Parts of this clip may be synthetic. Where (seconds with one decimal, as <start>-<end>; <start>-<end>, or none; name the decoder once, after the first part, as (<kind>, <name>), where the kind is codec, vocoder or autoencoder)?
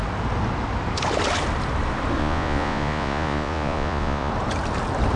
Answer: 2.2-4.3 (vocoder, Vocos)